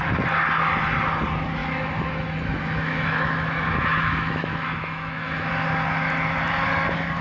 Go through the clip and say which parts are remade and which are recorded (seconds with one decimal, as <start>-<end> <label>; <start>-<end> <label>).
0.0-1.6 recorded; 1.6-5.5 remade; 5.5-7.2 recorded